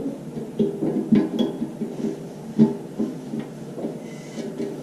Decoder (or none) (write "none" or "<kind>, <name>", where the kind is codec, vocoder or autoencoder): none